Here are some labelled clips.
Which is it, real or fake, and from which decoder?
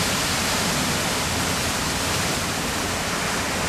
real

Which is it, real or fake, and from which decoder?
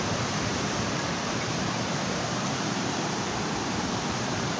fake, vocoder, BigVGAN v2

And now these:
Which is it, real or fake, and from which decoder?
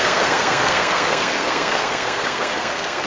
fake, codec, SNAC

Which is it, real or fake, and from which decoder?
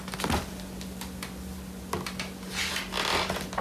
real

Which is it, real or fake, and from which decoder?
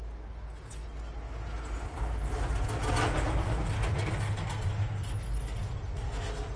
real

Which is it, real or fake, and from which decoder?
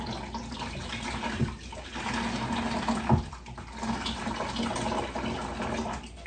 real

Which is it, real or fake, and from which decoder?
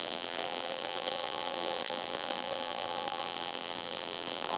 fake, vocoder, BigVGAN v2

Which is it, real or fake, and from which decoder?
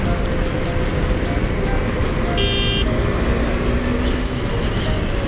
real